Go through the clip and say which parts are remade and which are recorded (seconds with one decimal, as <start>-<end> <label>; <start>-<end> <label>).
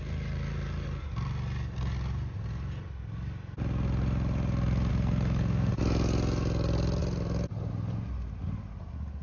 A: 0.0-4.9 recorded; 4.9-5.7 remade; 5.7-9.2 recorded